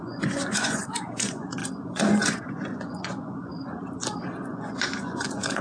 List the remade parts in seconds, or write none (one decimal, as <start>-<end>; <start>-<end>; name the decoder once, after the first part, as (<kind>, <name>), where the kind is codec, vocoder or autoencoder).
0.0-3.5 (vocoder, Vocos); 4.5-5.6